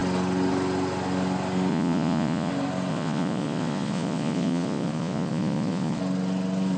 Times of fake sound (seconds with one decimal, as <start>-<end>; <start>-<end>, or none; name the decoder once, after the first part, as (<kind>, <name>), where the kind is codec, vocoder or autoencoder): 1.7-2.5 (vocoder, Vocos); 2.9-6.0

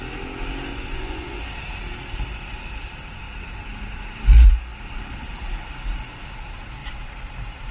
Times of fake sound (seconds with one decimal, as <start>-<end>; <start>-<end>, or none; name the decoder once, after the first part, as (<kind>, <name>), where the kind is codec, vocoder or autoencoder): 0.7-1.4 (vocoder, Vocos)

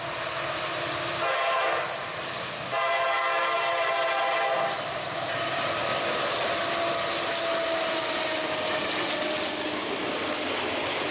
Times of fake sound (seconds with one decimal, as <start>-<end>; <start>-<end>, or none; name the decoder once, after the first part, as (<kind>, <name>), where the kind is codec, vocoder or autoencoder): none

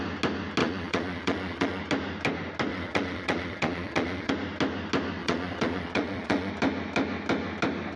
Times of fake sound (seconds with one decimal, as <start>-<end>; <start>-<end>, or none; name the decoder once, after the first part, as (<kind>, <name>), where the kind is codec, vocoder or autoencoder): 0.6-1.8 (vocoder, Vocos); 2.7-4.3; 5.2-6.5

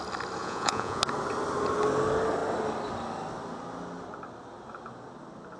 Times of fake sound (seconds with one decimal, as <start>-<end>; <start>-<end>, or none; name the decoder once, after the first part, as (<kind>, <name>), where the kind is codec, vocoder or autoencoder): 0.4-1.0 (vocoder, Vocos)

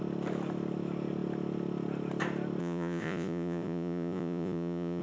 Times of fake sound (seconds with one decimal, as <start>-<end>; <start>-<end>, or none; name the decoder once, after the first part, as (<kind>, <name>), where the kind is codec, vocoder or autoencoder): 2.6-5.0 (vocoder, Vocos)

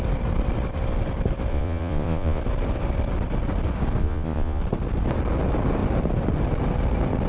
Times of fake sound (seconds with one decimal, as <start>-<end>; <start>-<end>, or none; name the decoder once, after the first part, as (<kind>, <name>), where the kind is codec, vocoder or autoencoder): 1.5-2.4 (vocoder, Vocos); 4.0-4.6